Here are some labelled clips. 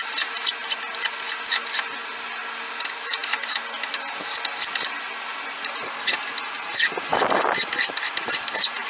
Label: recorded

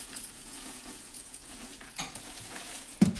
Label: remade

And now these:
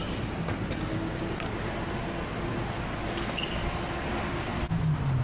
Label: recorded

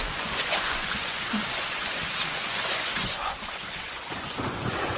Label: remade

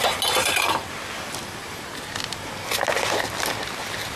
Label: recorded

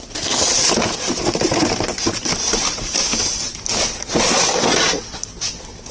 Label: recorded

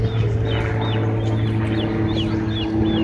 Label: recorded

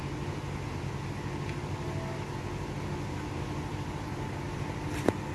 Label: recorded